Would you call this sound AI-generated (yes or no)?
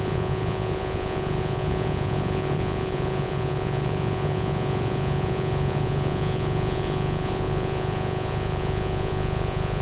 yes